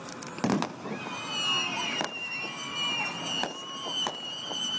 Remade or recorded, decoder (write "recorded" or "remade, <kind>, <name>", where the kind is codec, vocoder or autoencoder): recorded